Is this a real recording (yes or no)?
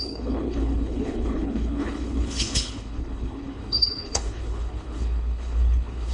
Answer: no